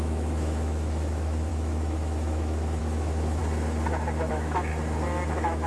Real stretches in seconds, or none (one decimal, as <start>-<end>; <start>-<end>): 3.4-4.3; 4.7-5.3